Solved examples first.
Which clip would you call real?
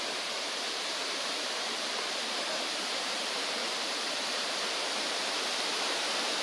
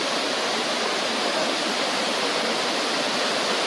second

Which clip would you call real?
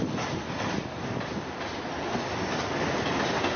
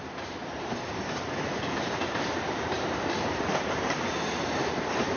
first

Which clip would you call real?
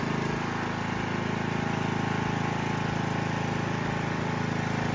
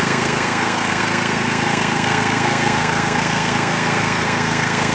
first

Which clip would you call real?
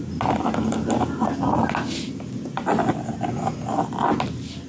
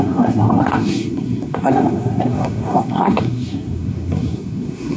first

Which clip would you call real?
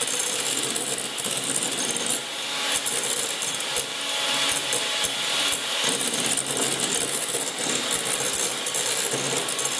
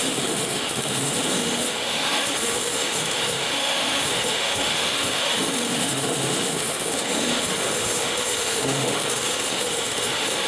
first